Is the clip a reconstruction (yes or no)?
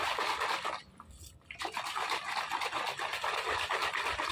no